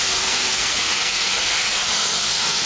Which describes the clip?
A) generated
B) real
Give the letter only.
A